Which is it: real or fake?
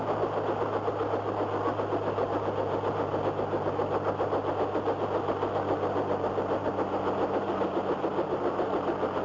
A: real